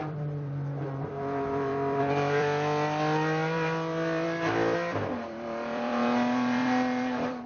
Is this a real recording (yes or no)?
no